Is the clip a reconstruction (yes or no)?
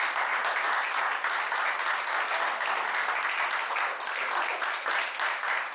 no